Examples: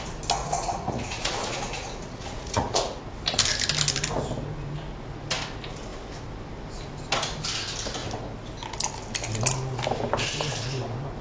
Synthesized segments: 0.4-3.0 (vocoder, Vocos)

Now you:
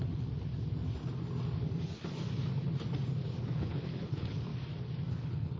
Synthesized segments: 0.0-0.5 (codec, HILCodec); 3.4-4.5; 5.1-5.6

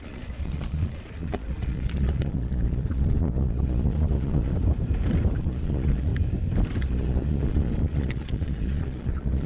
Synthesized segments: 0.0-4.5 (vocoder, Vocos); 5.4-6.1; 6.8-9.5

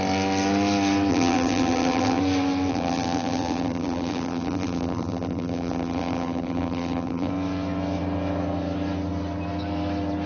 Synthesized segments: 1.1-2.2 (vocoder, BigVGAN v2); 2.7-7.3